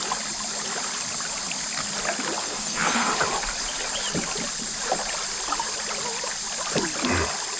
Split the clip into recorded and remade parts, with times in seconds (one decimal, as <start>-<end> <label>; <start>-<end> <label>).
0.0-2.4 recorded; 2.4-3.1 remade; 3.1-7.6 recorded